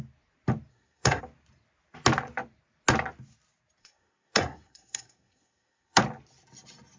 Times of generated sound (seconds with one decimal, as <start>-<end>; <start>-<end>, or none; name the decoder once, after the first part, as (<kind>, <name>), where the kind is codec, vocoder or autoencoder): 0.7-1.2 (codec, SNAC); 3.8-6.0